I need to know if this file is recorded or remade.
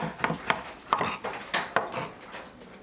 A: recorded